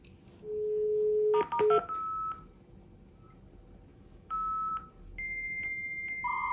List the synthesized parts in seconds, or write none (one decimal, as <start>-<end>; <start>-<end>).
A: 3.9-4.7